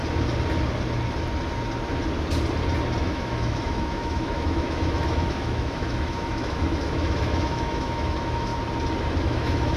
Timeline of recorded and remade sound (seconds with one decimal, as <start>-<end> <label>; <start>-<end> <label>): 0.0-3.0 recorded; 3.0-8.5 remade; 8.5-9.2 recorded; 9.2-9.8 remade